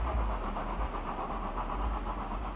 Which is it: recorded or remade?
recorded